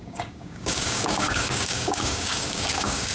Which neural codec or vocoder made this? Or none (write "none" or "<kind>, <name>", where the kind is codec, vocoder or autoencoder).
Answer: codec, DAC